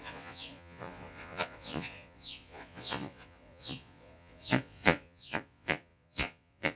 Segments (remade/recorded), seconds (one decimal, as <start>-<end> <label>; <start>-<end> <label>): 0.0-6.8 remade